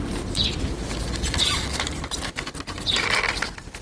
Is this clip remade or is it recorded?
recorded